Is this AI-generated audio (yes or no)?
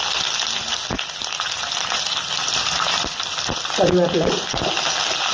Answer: no